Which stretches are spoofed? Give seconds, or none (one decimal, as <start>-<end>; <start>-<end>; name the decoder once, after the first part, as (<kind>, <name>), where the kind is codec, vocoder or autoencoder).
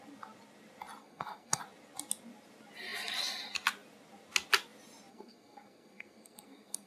1.0-1.6 (codec, SNAC); 5.1-6.9